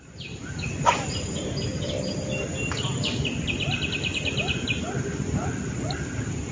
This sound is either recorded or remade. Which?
recorded